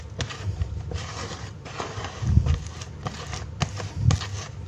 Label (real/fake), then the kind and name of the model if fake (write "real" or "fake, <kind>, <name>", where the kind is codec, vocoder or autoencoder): real